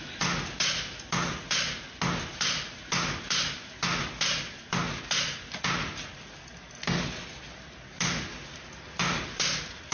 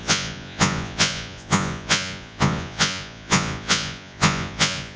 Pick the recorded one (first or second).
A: first